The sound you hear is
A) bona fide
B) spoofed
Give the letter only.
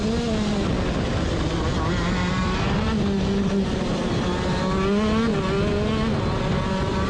A